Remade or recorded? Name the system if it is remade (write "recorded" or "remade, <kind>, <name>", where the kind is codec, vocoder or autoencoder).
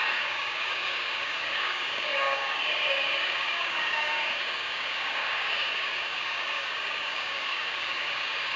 remade, codec, DAC